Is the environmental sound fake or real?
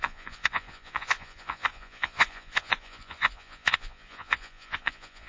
fake